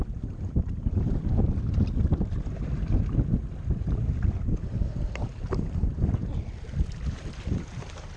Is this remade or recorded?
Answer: recorded